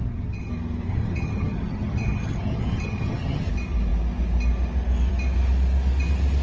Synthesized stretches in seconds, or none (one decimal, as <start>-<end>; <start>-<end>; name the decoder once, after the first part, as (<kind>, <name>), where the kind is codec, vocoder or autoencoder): 0.0-0.5 (vocoder, HiFi-GAN); 0.9-3.5